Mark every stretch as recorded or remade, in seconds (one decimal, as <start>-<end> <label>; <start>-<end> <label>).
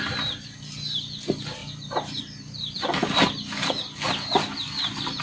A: 0.0-5.2 recorded